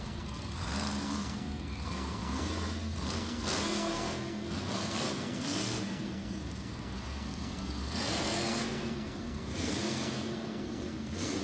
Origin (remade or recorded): remade